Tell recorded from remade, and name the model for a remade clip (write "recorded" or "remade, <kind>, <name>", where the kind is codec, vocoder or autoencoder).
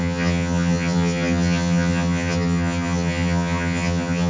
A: remade, vocoder, HiFi-GAN